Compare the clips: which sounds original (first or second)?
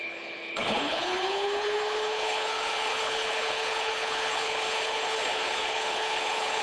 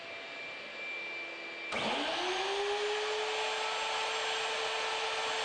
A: second